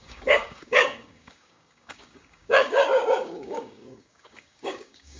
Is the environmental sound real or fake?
fake